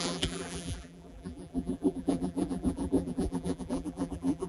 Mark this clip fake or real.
fake